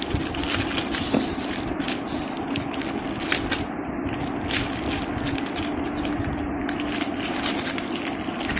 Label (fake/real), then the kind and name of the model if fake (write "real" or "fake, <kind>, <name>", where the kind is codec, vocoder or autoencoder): real